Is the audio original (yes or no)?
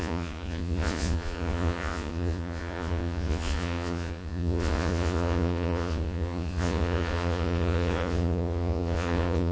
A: no